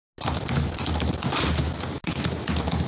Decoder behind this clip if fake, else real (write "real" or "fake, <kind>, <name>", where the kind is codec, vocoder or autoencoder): real